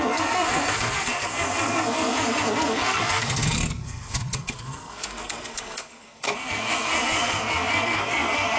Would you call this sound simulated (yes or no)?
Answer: yes